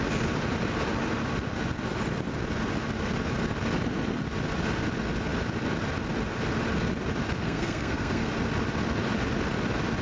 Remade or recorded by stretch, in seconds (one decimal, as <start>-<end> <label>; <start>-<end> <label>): 0.0-7.4 recorded; 7.4-8.3 remade; 8.3-10.0 recorded